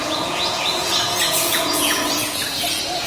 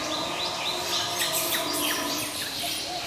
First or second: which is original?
second